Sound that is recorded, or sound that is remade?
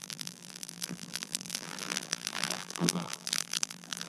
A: remade